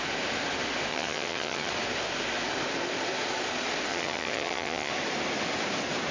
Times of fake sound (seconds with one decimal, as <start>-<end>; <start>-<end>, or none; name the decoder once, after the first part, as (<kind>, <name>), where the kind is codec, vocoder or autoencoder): 0.9-1.7 (vocoder, HiFi-GAN); 3.9-4.9